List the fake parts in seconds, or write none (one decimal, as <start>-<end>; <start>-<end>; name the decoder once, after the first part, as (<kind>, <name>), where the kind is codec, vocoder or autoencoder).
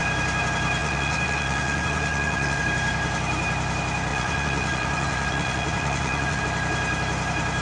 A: 0.8-2.6 (vocoder, Vocos); 4.1-6.4